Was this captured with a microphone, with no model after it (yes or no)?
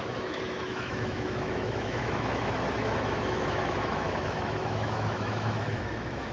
no